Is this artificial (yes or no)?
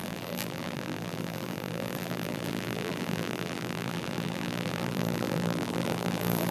yes